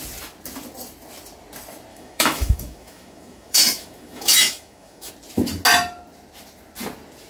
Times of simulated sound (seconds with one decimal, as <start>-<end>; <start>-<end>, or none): 1.9-5.1